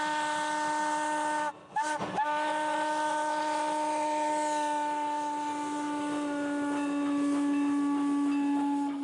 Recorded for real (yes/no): yes